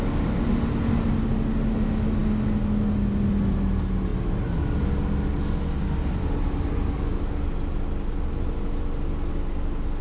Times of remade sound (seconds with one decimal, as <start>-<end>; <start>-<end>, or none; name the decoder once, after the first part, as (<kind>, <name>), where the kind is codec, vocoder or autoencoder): none